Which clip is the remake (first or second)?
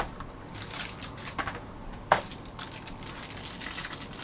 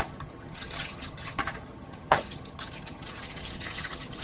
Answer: second